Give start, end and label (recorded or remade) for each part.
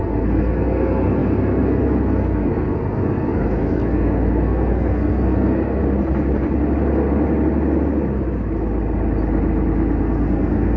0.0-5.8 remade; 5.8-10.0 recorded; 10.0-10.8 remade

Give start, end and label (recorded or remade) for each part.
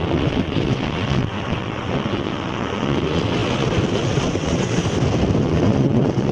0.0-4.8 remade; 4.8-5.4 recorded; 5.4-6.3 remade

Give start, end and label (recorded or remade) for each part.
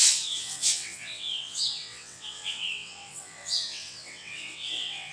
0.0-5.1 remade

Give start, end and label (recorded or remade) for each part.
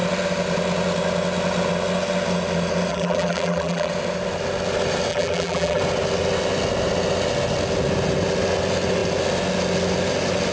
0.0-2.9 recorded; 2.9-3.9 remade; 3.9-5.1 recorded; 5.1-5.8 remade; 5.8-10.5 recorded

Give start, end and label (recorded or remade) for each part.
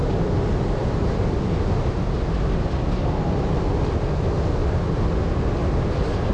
0.0-0.8 recorded; 0.8-1.4 remade; 1.4-4.6 recorded; 4.6-5.2 remade; 5.2-6.3 recorded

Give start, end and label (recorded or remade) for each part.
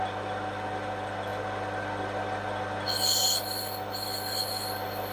0.0-5.1 recorded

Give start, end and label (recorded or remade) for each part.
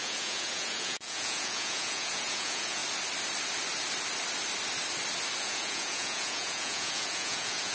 0.0-2.8 remade; 2.8-5.4 recorded; 5.4-7.7 remade